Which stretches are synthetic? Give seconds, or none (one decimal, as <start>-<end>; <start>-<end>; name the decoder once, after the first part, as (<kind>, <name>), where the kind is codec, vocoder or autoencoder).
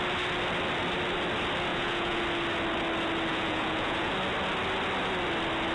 1.7-2.2 (vocoder, Vocos); 3.3-4.1